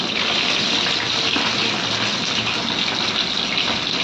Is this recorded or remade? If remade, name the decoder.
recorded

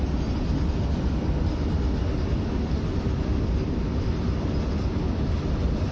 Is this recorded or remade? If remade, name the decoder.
recorded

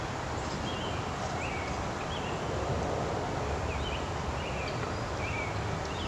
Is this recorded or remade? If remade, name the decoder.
recorded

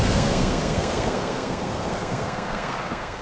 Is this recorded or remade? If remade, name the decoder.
remade, codec, SNAC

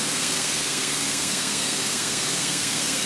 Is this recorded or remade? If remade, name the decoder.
remade, codec, SNAC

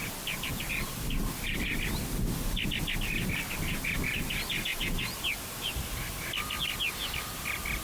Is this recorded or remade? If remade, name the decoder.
recorded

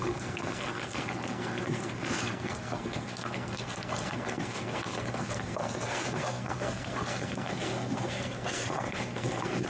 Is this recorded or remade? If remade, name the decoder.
remade, codec, SNAC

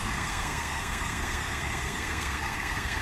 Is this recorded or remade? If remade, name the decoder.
remade, codec, SNAC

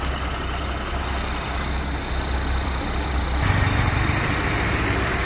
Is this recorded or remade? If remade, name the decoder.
recorded